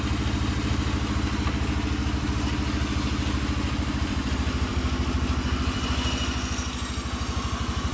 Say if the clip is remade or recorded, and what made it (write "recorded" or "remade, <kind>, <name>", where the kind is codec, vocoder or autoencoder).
recorded